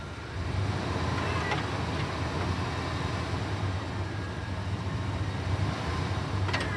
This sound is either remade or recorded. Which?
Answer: recorded